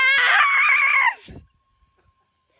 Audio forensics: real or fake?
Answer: real